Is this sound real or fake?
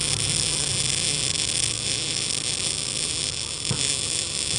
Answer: real